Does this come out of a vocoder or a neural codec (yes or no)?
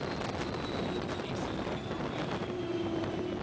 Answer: no